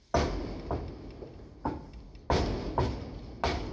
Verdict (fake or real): real